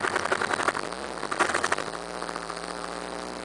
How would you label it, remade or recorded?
recorded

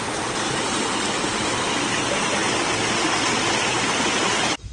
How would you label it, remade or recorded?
recorded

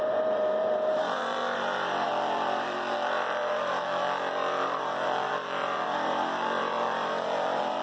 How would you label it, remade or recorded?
remade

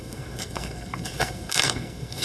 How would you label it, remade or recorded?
remade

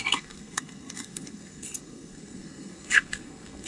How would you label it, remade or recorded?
remade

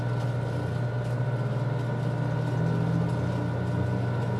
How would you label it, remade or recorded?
recorded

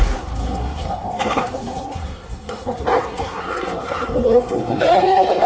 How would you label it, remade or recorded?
remade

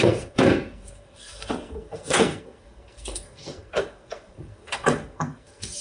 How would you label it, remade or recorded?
remade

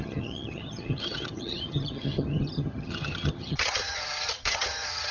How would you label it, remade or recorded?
remade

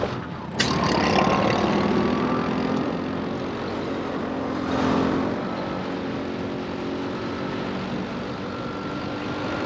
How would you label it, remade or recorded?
recorded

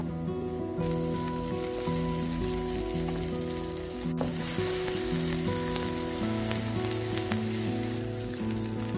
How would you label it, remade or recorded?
recorded